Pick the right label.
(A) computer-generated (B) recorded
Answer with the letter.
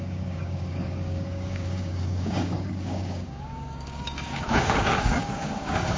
A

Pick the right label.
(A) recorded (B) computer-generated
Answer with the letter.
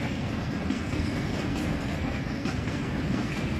B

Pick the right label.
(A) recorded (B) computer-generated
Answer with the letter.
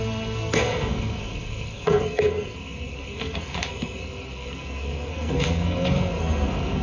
B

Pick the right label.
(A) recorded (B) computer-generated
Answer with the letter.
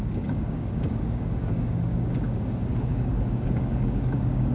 B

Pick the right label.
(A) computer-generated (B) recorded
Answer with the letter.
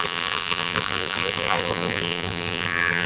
A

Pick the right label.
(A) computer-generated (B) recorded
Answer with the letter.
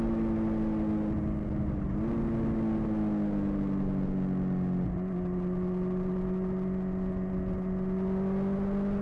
B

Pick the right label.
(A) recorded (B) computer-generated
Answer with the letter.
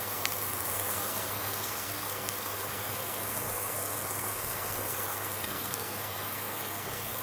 B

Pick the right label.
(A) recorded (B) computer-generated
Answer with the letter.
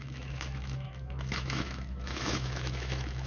B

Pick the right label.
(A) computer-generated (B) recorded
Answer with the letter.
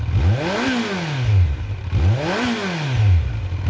B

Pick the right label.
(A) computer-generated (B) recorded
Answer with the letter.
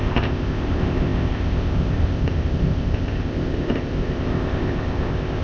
A